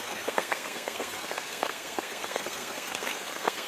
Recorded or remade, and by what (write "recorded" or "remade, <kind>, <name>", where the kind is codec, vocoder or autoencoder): remade, codec, SNAC